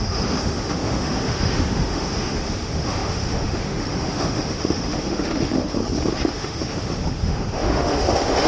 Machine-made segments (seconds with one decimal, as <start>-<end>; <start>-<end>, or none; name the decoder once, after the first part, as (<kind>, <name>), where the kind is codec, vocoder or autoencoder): 0.0-5.8 (autoencoder, DAC-VAE); 6.3-8.5